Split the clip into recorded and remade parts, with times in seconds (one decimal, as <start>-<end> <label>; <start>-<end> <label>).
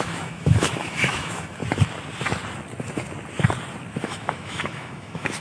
0.0-1.6 remade; 1.6-4.0 recorded; 4.0-5.4 remade